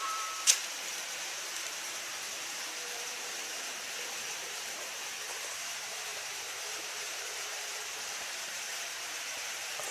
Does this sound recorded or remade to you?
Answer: remade